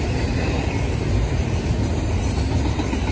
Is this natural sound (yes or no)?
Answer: yes